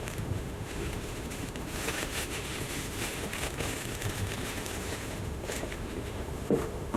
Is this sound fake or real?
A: fake